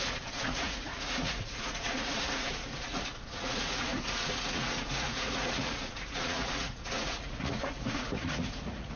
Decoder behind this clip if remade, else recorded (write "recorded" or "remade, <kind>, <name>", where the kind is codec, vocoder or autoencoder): remade, vocoder, Vocos